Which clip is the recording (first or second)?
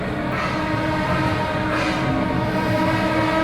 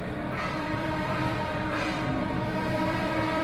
first